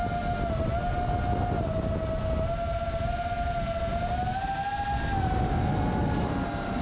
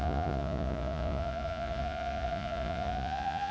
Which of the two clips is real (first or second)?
first